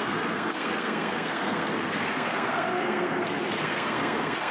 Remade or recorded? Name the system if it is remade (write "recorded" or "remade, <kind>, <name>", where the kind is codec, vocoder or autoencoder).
remade, codec, SNAC